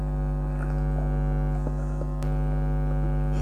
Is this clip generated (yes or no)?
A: no